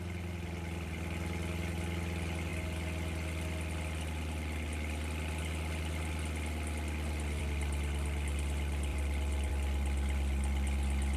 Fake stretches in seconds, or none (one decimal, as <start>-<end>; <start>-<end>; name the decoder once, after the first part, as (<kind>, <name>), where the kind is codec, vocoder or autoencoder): 8.9-9.5 (vocoder, BigVGAN v2)